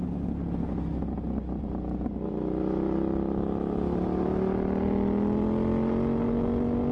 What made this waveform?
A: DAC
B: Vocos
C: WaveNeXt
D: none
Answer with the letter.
D